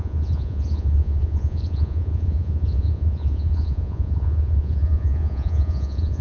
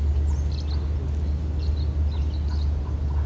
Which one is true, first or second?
second